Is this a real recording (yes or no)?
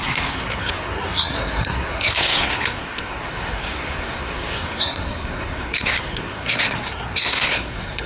no